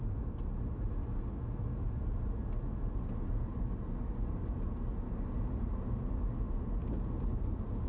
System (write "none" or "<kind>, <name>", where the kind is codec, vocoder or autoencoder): none